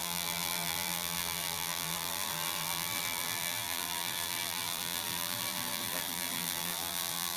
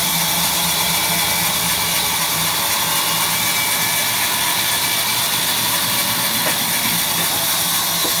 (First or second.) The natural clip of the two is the second